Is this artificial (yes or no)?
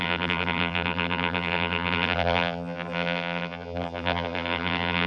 yes